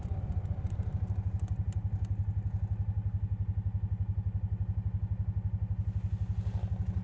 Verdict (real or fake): real